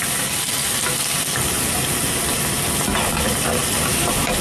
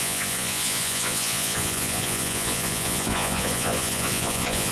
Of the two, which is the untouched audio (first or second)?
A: first